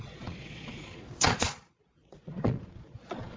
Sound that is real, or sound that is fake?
fake